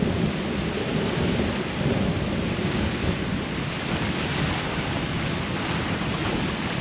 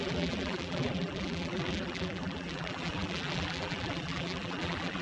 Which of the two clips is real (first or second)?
first